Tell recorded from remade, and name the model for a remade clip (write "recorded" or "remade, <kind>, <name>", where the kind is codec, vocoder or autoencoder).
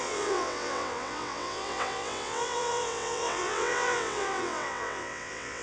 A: remade, vocoder, WaveNeXt